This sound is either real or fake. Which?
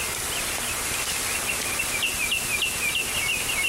real